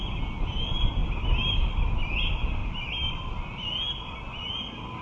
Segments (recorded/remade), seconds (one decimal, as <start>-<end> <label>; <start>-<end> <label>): 0.0-5.0 recorded